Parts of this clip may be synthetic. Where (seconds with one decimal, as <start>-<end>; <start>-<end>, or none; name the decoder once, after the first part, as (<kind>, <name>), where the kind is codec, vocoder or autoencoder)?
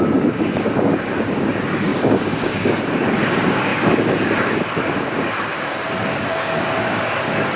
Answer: 0.0-7.6 (codec, DAC)